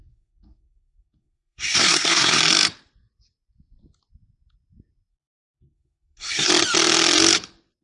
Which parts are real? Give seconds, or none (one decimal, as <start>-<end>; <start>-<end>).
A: 2.4-5.1; 6.5-7.8